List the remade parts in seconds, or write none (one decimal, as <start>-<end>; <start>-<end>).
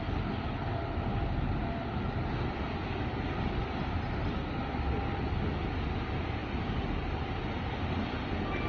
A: none